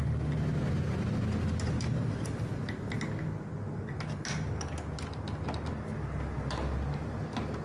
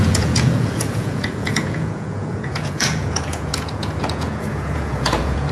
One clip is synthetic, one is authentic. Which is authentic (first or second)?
first